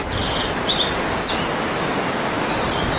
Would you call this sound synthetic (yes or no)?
no